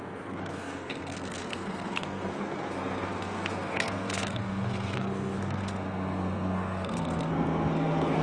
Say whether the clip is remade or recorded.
remade